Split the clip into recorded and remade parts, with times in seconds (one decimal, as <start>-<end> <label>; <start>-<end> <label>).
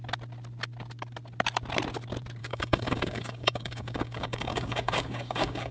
0.0-2.4 recorded; 2.4-5.7 remade